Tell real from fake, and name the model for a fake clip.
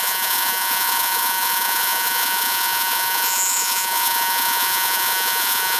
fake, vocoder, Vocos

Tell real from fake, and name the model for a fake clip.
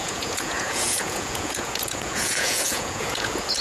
fake, vocoder, Vocos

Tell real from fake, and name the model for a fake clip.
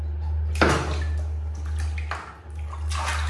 real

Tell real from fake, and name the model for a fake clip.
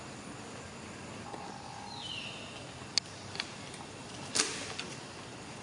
real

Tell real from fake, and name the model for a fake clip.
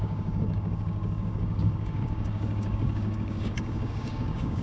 fake, codec, DAC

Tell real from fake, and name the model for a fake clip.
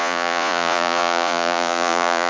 fake, vocoder, Vocos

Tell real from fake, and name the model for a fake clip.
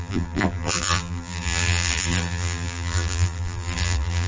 fake, vocoder, BigVGAN v2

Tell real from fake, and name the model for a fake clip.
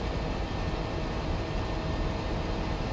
real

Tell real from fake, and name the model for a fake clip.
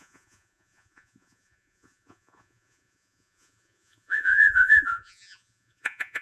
fake, vocoder, Vocos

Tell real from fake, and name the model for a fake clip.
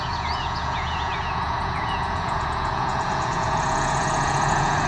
fake, vocoder, Vocos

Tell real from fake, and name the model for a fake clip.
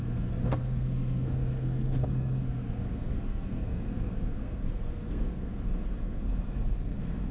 fake, codec, SNAC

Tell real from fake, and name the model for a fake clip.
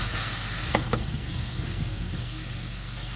fake, codec, SNAC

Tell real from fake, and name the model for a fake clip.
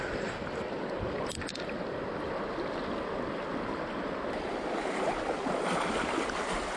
real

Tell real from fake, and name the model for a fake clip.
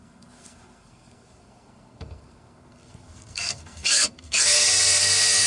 fake, codec, SNAC